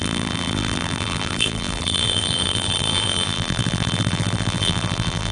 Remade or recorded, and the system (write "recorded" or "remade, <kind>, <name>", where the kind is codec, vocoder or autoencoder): remade, vocoder, BigVGAN v2